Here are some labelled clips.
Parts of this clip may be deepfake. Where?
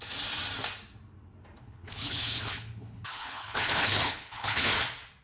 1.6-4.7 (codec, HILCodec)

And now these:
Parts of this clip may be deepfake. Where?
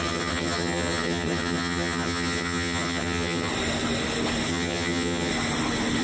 0.0-3.5 (vocoder, HiFi-GAN); 4.5-5.3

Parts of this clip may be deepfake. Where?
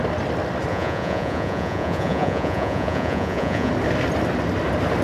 0.7-3.7 (vocoder, Vocos)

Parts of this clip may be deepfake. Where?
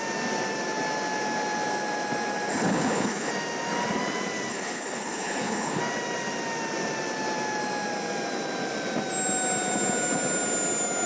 2.5-3.3 (codec, HILCodec); 4.5-5.8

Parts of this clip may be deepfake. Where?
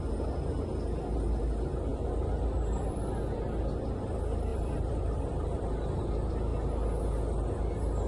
4.5-6.0 (vocoder, BigVGAN v2)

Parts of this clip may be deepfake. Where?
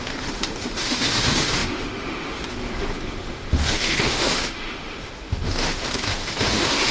0.0-6.9 (autoencoder, DAC-VAE)